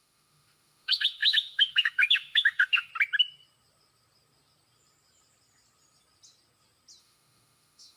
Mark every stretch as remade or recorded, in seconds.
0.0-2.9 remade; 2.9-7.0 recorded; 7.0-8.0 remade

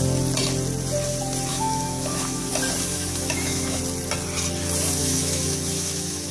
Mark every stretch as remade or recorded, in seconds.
0.0-1.5 recorded; 1.5-2.5 remade; 2.5-2.9 recorded; 2.9-3.8 remade; 3.8-5.0 recorded; 5.0-6.3 remade

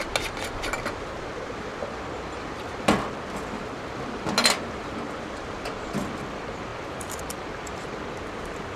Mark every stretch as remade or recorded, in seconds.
0.0-8.8 recorded

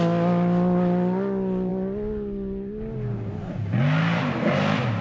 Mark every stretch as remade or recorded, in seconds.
0.0-5.0 recorded

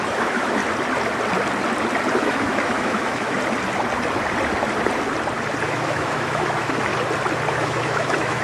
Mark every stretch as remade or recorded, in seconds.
0.0-0.6 remade; 0.6-2.1 recorded; 2.1-3.4 remade; 3.4-5.6 recorded; 5.6-6.9 remade; 6.9-7.5 recorded; 7.5-8.4 remade

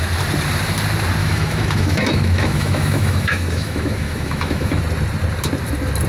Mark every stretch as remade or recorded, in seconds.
0.0-1.2 recorded; 1.2-4.8 remade; 4.8-6.1 recorded